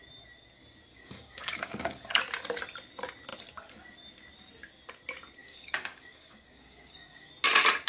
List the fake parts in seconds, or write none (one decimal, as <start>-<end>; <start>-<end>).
0.9-2.2; 5.4-7.3